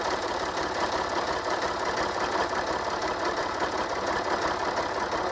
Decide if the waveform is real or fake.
fake